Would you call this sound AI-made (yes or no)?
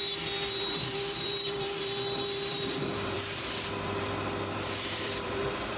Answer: yes